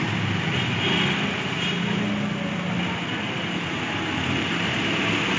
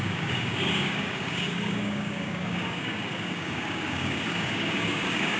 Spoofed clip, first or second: second